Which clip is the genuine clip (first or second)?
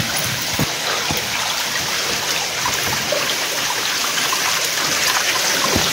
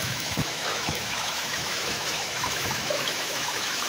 first